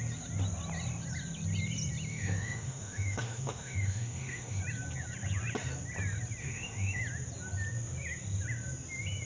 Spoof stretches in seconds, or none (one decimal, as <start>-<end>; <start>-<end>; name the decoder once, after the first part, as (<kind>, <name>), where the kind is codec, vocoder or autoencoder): 2.1-4.6 (autoencoder, DAC-VAE); 6.4-7.0